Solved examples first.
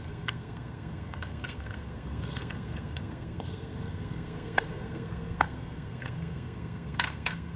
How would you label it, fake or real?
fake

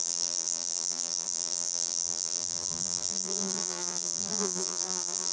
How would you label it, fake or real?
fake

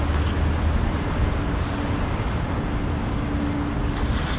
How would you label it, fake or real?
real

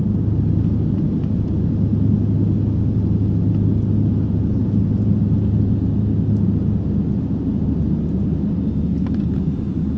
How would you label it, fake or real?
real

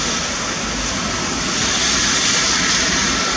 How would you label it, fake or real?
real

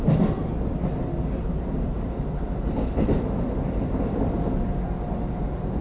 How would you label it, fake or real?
real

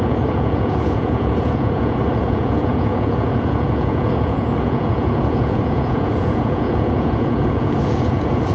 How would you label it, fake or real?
fake